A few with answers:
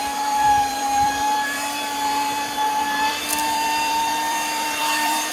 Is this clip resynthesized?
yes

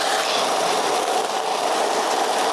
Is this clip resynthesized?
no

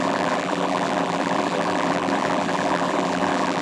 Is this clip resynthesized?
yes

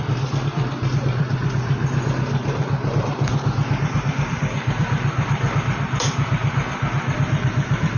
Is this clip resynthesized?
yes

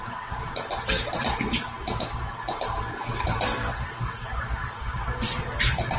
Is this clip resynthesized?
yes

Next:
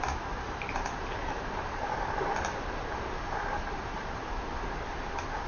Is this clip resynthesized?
yes